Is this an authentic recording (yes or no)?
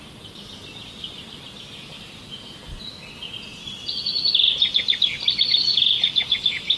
yes